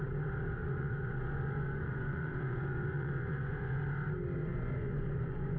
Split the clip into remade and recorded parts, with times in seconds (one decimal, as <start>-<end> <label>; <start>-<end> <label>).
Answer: 0.0-0.6 recorded; 0.6-3.8 remade; 3.8-4.5 recorded; 4.5-5.6 remade